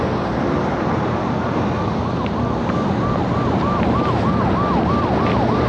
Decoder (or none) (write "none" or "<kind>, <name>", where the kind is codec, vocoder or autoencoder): none